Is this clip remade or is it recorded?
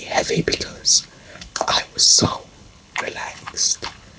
remade